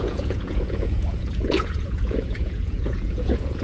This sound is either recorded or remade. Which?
remade